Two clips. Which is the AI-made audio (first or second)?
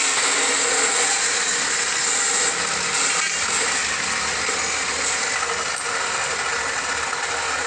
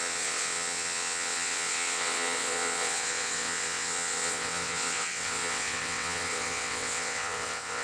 second